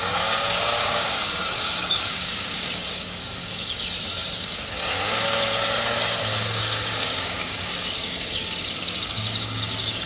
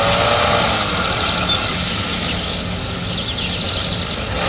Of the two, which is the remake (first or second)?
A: first